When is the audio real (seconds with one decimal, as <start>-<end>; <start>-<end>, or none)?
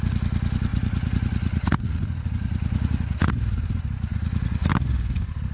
0.0-0.7; 3.3-4.1; 4.7-5.5